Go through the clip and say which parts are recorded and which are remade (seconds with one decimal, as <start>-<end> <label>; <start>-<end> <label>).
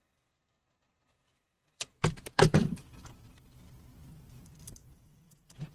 0.0-1.1 recorded; 1.1-3.3 remade; 3.3-4.8 recorded; 4.8-5.7 remade